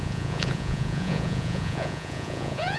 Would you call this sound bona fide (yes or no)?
no